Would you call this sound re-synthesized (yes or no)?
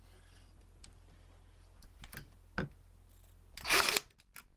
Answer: no